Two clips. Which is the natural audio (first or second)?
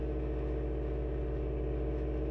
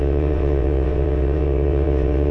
first